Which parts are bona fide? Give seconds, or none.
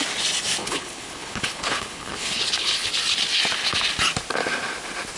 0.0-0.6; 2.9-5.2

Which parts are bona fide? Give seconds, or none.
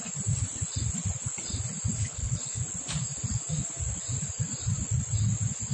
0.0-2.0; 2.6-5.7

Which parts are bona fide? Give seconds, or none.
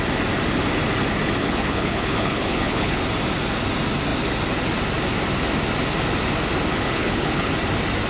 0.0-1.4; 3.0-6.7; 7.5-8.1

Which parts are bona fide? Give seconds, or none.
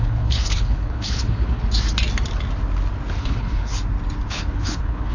1.6-3.2; 3.7-4.3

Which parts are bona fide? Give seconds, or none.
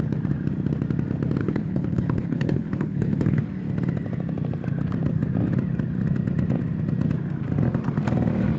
0.0-1.4; 3.4-8.6